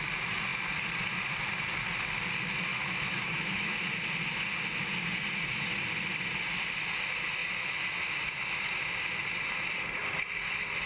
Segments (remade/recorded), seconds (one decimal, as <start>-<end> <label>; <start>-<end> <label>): 0.0-2.7 recorded; 2.7-3.9 remade; 3.9-10.9 recorded